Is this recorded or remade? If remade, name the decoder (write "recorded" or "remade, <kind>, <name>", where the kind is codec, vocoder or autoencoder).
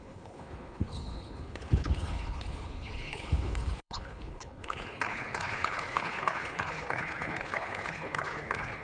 remade, codec, HILCodec